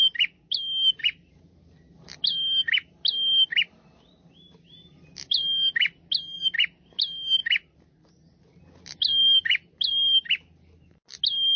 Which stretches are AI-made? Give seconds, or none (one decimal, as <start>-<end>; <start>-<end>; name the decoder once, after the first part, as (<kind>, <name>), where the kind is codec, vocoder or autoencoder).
none

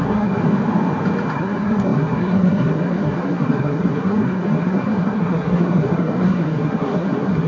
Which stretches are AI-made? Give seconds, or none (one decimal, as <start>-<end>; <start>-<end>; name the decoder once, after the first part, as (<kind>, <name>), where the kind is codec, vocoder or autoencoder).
0.0-0.4 (codec, SNAC); 1.3-7.5